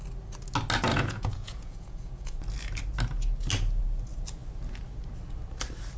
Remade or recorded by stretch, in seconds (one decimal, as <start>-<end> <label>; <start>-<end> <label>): 0.0-0.9 recorded; 0.9-2.4 remade; 2.4-6.0 recorded